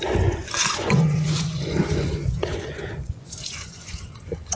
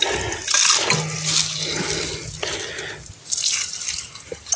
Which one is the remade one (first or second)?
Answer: first